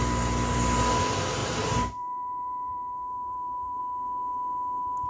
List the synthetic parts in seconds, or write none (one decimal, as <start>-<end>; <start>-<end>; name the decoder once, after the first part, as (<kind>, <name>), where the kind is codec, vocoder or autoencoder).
1.4-3.8 (vocoder, BigVGAN v2)